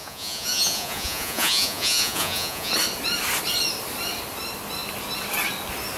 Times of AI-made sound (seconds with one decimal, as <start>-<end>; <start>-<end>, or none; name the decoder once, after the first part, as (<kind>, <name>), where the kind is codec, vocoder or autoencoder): 0.0-2.7 (vocoder, Vocos)